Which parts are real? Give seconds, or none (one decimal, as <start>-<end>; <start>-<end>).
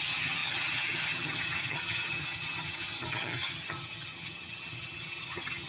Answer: none